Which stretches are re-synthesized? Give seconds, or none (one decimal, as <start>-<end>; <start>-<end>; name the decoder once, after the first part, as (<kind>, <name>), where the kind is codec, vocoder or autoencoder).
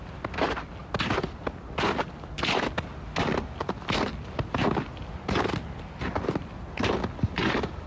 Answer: none